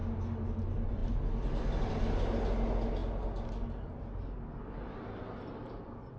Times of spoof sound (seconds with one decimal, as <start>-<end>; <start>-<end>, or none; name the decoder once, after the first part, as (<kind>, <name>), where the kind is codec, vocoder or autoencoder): none